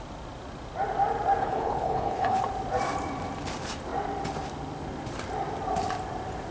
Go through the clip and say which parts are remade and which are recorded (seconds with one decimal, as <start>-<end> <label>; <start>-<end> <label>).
0.0-1.4 recorded; 1.4-2.4 remade; 2.4-6.5 recorded

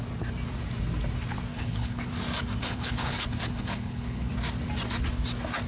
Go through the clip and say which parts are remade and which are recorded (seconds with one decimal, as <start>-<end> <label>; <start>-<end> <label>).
0.0-1.5 recorded; 1.5-2.0 remade; 2.0-2.6 recorded; 2.6-4.3 remade; 4.3-5.7 recorded

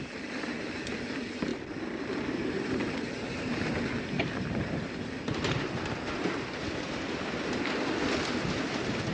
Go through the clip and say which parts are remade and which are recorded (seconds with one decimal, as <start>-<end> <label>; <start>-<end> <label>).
0.0-9.1 recorded

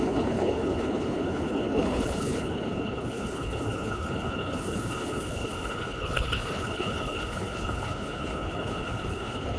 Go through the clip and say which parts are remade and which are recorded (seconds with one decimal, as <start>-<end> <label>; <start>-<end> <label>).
0.0-9.6 remade

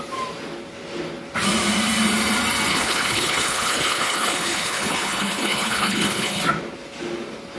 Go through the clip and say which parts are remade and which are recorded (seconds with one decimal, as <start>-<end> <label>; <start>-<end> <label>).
0.0-2.7 recorded; 2.7-6.4 remade; 6.4-7.6 recorded

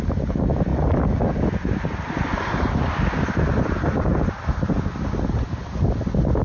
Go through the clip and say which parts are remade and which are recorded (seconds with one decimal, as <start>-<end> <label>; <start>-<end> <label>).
0.0-6.4 recorded

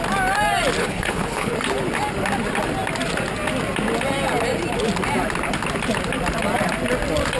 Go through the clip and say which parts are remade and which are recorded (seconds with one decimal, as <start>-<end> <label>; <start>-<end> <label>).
0.0-0.8 recorded; 0.8-1.5 remade; 1.5-7.4 recorded